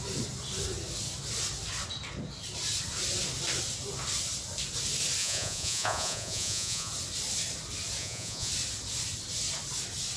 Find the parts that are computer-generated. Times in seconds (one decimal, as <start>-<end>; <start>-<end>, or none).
5.2-6.9; 8.0-8.5